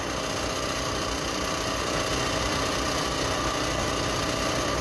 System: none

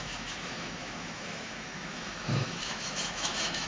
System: autoencoder, DAC-VAE